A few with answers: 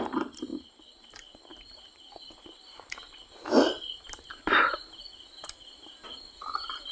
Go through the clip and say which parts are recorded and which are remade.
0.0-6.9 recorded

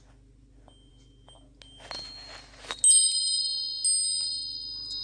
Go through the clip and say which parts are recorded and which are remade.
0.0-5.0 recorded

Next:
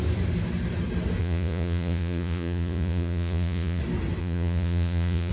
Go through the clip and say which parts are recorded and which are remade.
0.0-1.2 recorded; 1.2-3.8 remade; 3.8-4.2 recorded; 4.2-5.3 remade